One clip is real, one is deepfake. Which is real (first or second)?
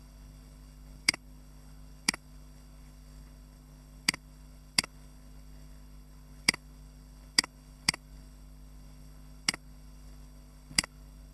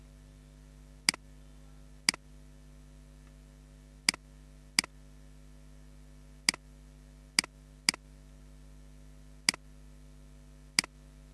second